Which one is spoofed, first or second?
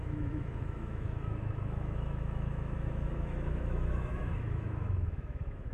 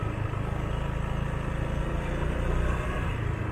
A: first